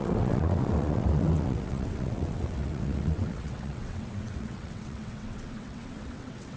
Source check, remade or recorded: remade